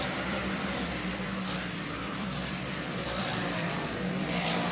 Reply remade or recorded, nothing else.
remade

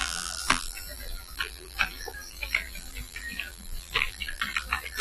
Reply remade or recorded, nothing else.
remade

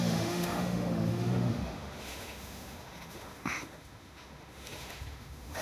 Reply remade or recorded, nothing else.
remade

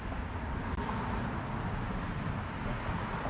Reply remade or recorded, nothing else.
recorded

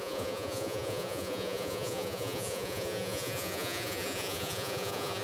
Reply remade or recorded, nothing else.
remade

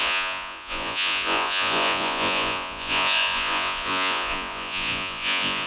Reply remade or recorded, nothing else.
remade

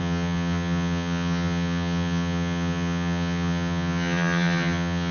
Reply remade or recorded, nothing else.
remade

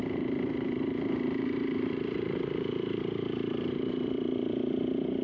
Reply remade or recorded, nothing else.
remade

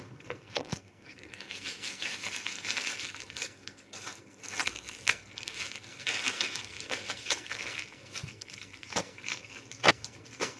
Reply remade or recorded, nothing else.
remade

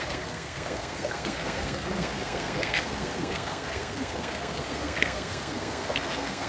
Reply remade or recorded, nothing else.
remade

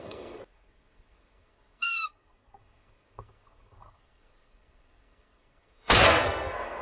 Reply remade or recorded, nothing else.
remade